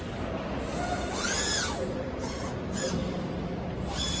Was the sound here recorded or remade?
recorded